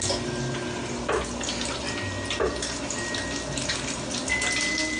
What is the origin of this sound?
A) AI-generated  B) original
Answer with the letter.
B